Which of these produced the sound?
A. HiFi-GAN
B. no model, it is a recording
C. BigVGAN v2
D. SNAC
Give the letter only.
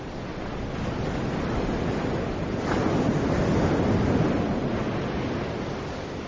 B